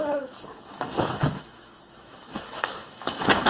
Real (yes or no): no